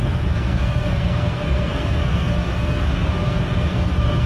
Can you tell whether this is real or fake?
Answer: fake